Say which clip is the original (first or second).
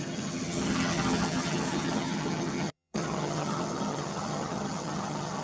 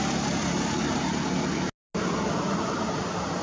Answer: second